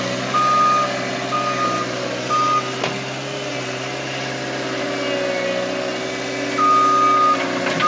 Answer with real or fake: real